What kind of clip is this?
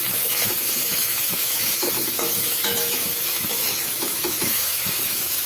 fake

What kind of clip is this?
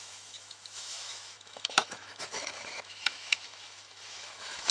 fake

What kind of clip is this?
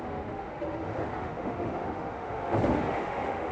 fake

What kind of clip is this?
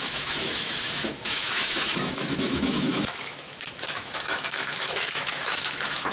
fake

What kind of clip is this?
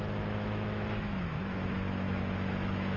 fake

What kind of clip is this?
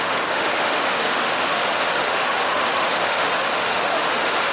fake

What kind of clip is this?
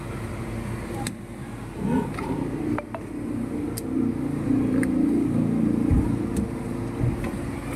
real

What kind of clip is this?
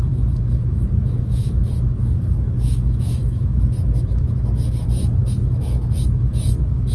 fake